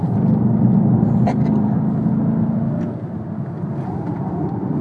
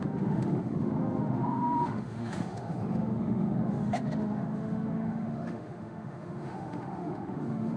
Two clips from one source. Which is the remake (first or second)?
second